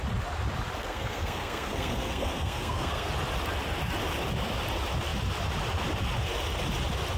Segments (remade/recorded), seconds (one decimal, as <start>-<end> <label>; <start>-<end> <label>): 0.0-0.8 recorded; 0.8-3.1 remade; 3.1-7.2 recorded